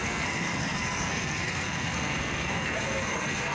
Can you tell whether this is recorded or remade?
remade